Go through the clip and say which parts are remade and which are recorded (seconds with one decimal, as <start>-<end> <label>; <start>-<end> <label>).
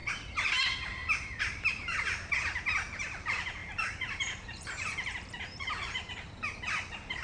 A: 0.0-0.6 recorded; 0.6-7.2 remade